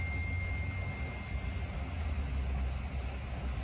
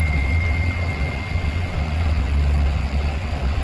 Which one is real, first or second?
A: first